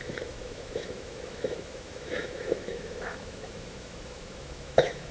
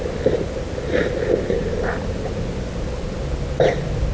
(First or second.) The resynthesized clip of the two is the first